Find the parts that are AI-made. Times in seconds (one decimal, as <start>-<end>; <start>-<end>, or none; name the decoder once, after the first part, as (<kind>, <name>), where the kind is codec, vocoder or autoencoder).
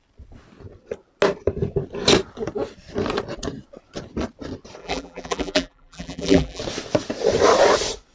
4.8-6.6 (vocoder, BigVGAN v2)